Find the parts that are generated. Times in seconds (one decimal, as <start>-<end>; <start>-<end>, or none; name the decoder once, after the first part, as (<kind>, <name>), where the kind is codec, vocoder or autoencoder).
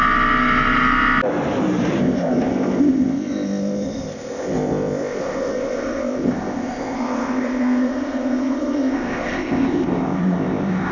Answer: 2.0-10.9 (codec, ZipCodec)